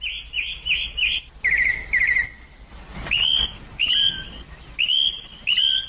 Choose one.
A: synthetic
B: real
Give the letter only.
B